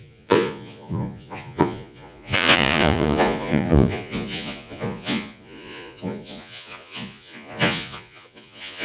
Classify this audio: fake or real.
fake